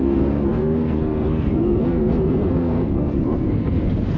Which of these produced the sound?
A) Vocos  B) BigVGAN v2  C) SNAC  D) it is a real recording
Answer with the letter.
C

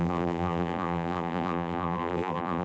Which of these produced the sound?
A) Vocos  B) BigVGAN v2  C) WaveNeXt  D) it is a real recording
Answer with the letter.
B